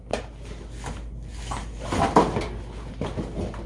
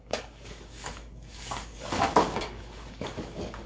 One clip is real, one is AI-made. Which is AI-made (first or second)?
second